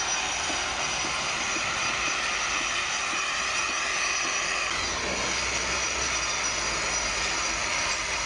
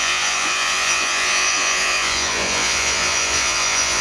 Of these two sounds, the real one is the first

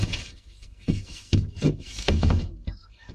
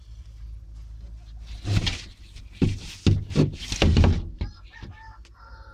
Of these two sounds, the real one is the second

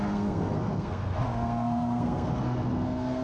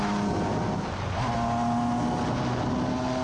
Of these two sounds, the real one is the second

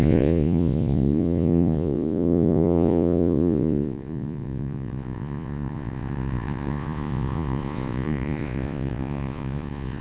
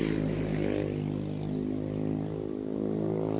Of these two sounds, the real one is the second